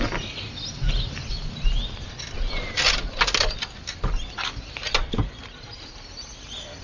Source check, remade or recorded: recorded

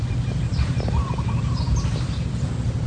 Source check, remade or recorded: recorded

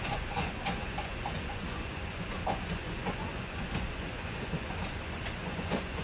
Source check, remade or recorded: remade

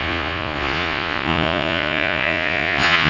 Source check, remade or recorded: remade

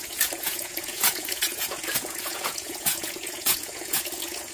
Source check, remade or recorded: remade